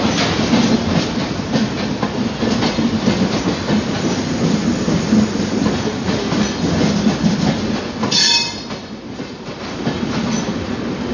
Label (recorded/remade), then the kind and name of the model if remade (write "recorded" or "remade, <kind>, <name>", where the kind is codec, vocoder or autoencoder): recorded